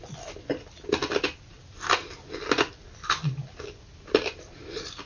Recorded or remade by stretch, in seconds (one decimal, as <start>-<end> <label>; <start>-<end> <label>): 0.0-5.1 recorded